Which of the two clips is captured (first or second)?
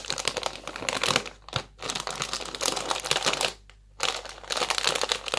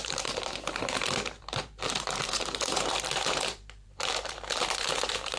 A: first